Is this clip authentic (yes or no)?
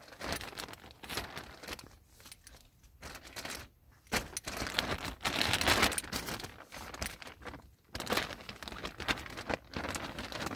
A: yes